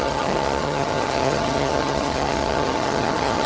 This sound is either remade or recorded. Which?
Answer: remade